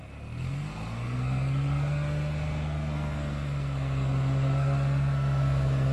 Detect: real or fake fake